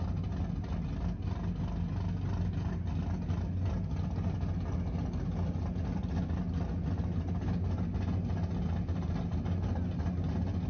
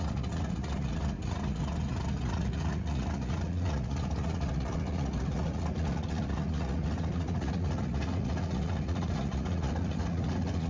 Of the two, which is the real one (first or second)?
first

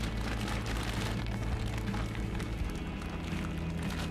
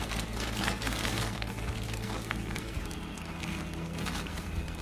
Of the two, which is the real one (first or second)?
first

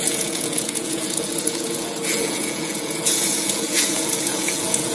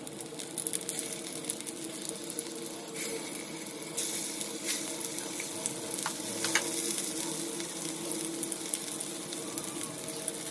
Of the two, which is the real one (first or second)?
second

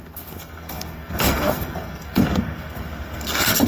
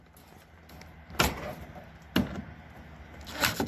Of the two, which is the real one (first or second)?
second